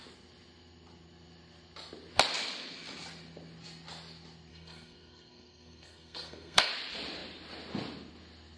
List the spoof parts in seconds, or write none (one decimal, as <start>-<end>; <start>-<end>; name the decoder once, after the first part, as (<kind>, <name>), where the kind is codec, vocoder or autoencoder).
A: 4.5-6.7 (codec, SNAC)